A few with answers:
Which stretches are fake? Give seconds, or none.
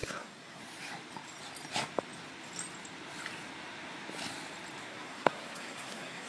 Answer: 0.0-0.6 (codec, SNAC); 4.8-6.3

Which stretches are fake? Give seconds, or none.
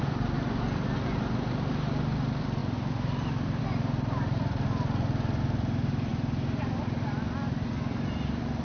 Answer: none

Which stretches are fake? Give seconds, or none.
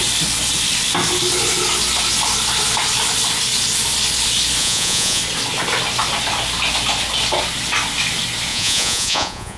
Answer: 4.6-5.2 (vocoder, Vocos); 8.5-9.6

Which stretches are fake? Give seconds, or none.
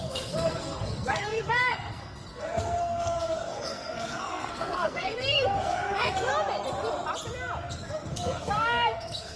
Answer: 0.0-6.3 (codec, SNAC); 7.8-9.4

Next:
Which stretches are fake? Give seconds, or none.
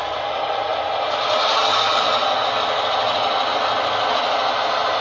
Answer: none